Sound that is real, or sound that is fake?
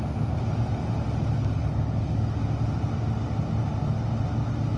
real